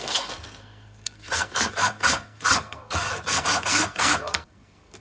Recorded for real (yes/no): no